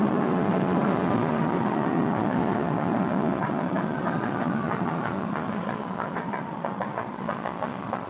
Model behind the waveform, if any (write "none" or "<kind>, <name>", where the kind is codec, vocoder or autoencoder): vocoder, Vocos